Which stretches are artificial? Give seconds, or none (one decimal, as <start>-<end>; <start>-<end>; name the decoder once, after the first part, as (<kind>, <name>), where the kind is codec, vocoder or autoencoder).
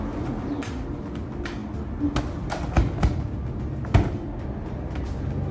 none